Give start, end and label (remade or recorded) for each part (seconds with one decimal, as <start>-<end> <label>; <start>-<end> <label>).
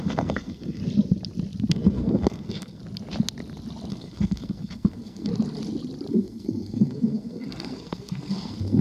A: 0.0-0.8 remade; 0.8-1.7 recorded; 1.7-2.8 remade; 2.8-3.9 recorded; 3.9-5.3 remade; 5.3-6.1 recorded; 6.1-8.8 remade